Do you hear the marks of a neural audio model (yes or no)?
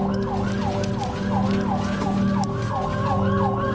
no